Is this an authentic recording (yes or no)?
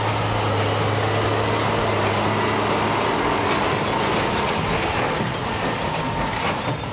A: yes